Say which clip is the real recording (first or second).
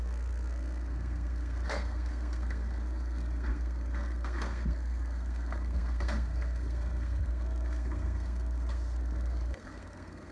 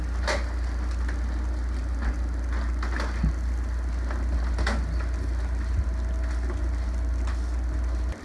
second